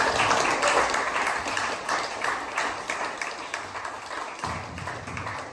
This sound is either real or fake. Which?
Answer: real